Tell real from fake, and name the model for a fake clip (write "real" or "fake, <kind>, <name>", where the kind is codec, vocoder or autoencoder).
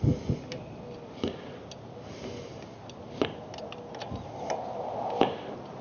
real